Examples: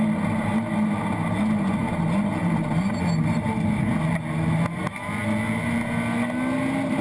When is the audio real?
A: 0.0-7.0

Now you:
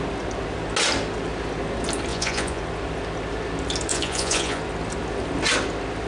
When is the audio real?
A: 0.0-2.1; 2.6-3.9; 4.6-6.1

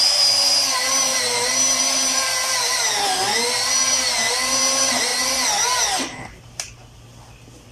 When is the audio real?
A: 5.1-6.0